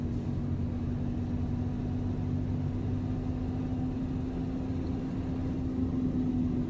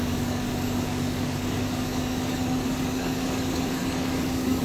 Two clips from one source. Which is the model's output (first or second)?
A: second